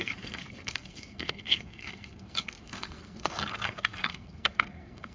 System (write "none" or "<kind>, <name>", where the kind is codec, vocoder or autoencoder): codec, SNAC